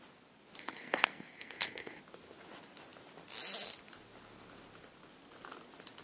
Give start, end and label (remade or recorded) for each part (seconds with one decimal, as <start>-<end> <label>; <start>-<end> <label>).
0.0-0.6 recorded; 0.6-2.0 remade; 2.0-6.0 recorded